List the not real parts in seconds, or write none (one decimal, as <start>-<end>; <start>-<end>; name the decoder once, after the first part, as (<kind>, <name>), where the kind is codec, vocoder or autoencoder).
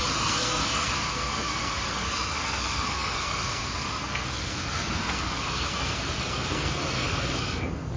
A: 0.0-8.0 (codec, SNAC)